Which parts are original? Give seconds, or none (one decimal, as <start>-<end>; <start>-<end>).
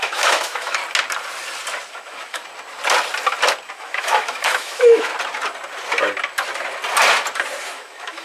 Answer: 0.8-1.9; 2.4-3.7; 5.1-7.6